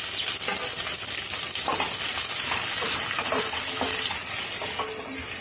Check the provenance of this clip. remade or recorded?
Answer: recorded